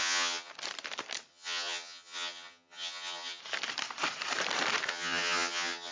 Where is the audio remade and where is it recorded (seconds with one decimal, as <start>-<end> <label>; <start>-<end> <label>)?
0.0-0.5 remade; 0.5-1.3 recorded; 1.3-3.4 remade; 3.4-4.9 recorded; 4.9-5.9 remade